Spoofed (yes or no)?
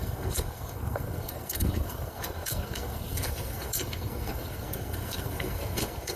yes